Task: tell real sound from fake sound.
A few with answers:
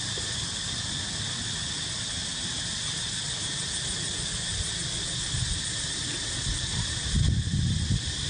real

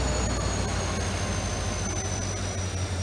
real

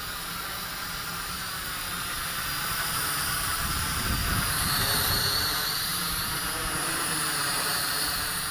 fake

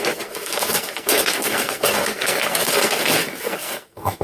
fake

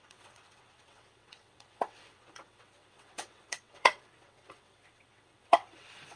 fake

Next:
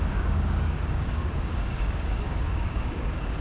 fake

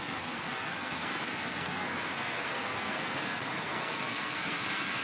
fake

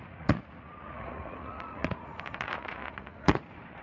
fake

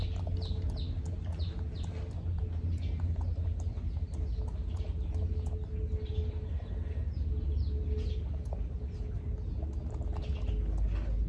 real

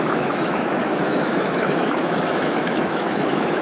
fake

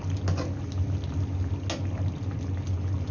real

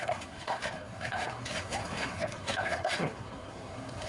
fake